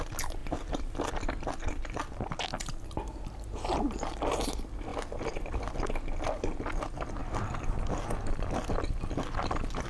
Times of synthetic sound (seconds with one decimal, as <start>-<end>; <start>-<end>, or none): 0.4-1.1